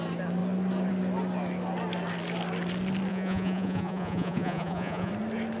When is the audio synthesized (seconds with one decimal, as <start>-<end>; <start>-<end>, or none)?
3.1-5.1